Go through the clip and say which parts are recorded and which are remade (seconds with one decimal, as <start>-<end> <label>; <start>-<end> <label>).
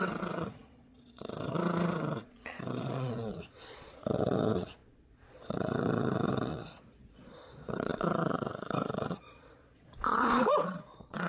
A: 0.0-11.3 remade